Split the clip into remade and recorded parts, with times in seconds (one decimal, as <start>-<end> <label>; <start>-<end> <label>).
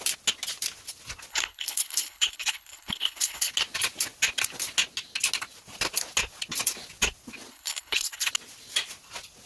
0.0-1.3 recorded; 1.3-3.5 remade; 3.5-7.5 recorded; 7.5-8.3 remade; 8.3-9.5 recorded